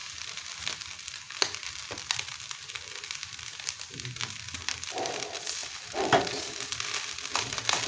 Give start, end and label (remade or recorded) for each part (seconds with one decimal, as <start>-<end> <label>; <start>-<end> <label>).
0.0-5.6 remade; 5.6-6.2 recorded; 6.2-7.9 remade